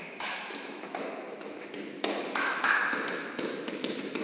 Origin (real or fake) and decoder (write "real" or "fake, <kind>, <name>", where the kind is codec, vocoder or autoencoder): fake, autoencoder, DAC-VAE